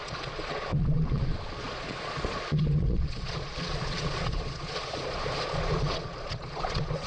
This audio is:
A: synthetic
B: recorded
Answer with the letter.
A